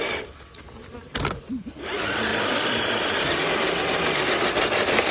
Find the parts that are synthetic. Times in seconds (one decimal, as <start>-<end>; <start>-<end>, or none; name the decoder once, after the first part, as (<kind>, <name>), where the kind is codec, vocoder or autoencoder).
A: 0.0-5.1 (vocoder, BigVGAN v2)